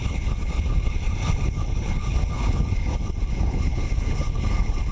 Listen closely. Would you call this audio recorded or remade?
remade